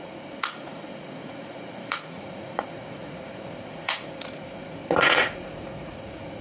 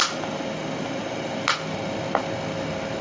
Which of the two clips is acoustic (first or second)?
second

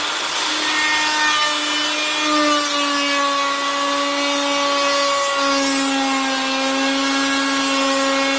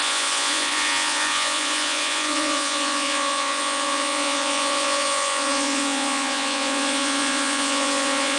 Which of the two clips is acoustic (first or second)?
first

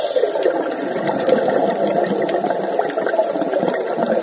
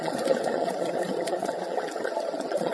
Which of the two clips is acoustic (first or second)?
first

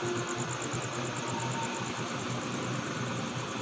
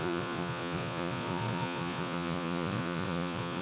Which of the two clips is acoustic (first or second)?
first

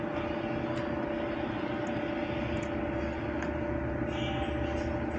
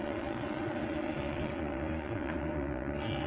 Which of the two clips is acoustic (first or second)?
first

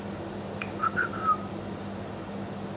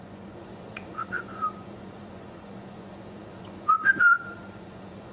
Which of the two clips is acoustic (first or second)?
first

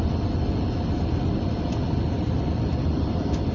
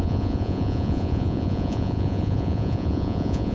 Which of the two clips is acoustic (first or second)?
first